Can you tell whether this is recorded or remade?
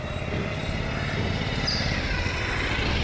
recorded